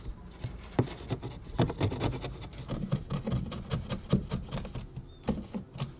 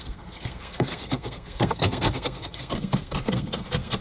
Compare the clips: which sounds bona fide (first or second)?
first